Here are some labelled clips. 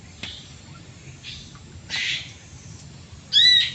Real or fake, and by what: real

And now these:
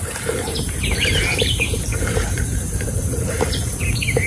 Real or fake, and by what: fake, vocoder, BigVGAN v2